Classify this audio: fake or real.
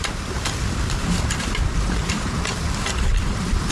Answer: fake